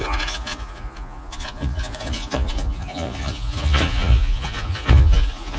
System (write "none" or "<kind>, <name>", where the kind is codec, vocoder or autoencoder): vocoder, Vocos